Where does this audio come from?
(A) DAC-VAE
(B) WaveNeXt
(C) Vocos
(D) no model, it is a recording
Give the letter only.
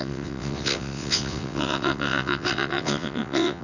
B